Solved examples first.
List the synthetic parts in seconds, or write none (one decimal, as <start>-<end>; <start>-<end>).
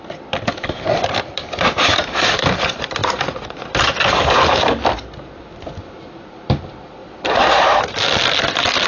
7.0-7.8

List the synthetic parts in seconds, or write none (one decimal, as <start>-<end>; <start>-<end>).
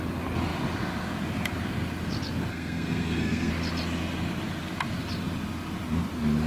2.5-3.5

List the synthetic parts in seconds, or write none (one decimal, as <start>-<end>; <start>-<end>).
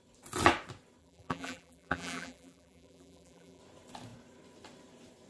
1.0-3.6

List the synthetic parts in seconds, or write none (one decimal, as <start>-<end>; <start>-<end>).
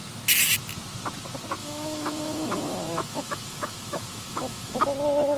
1.6-4.8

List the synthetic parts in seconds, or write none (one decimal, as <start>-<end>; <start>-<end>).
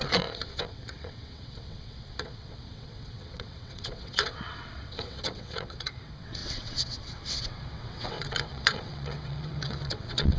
0.0-10.4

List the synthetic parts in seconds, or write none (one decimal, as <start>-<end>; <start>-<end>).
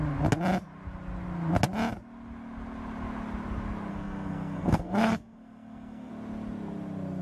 3.9-6.1